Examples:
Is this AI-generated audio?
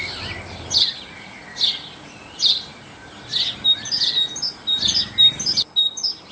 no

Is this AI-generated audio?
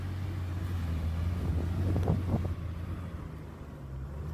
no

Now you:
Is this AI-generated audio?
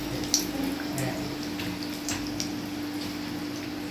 no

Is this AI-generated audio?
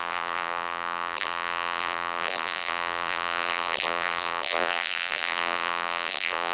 yes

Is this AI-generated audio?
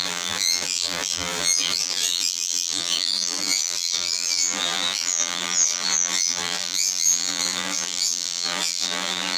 yes